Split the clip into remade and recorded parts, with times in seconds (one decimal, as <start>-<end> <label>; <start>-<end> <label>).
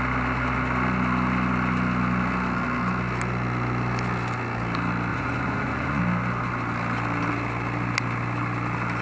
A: 0.0-5.1 recorded; 5.1-6.0 remade; 6.0-9.0 recorded